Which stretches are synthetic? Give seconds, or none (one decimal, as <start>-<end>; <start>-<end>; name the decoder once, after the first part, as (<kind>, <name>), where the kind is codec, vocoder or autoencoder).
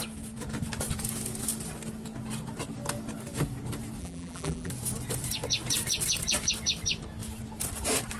4.0-4.7 (vocoder, BigVGAN v2)